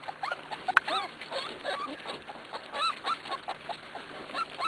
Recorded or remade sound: recorded